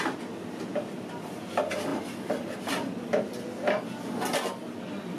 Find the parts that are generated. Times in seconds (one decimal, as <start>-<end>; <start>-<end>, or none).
none